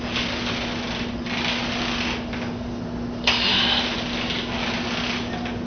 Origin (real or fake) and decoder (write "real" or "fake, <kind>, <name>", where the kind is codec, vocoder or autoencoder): real